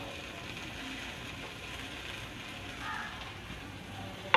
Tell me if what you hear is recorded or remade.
recorded